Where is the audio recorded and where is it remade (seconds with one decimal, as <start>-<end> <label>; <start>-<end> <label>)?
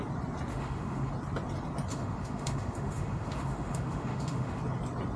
0.0-0.5 recorded; 0.5-1.1 remade; 1.1-1.9 recorded; 1.9-4.6 remade; 4.6-5.2 recorded